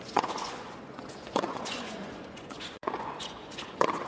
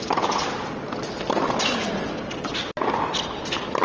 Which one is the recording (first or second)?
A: second